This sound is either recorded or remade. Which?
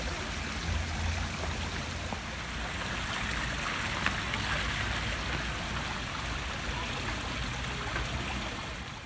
recorded